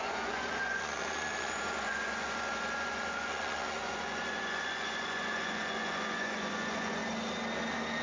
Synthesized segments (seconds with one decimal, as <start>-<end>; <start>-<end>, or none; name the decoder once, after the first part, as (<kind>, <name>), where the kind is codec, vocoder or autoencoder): 0.0-7.0 (vocoder, Vocos)